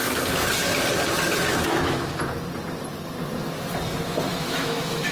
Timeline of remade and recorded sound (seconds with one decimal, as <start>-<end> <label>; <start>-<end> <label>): 0.0-1.5 recorded; 1.5-2.2 remade; 2.2-4.3 recorded; 4.3-5.1 remade